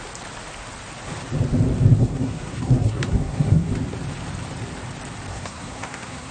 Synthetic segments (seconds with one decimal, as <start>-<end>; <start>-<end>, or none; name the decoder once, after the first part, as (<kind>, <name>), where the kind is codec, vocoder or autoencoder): 2.0-3.7 (codec, SNAC); 5.3-6.3